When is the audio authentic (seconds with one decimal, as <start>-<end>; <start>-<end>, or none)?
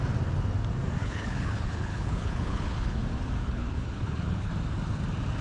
0.0-1.0; 3.0-3.4; 4.5-5.4